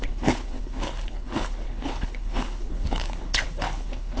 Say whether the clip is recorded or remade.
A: remade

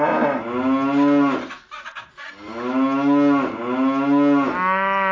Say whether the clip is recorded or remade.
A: recorded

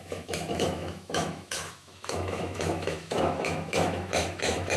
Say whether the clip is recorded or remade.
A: remade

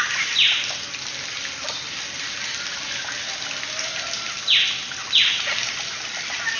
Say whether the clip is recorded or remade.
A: recorded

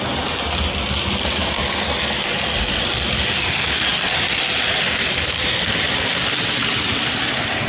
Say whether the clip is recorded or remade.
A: recorded